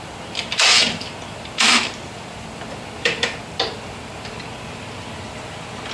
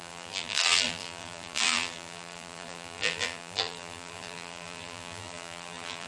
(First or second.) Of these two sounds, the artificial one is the second